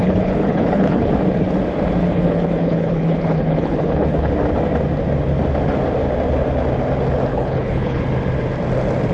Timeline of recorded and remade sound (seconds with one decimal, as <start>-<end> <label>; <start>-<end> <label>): 0.0-1.1 remade; 1.1-2.0 recorded; 2.0-4.3 remade; 4.3-7.3 recorded; 7.3-8.0 remade; 8.0-9.1 recorded